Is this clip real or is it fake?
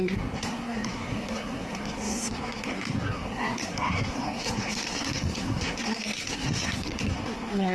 fake